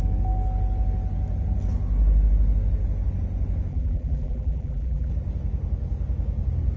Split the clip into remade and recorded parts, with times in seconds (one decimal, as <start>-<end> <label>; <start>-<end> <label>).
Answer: 0.0-3.7 recorded; 3.7-5.1 remade; 5.1-6.8 recorded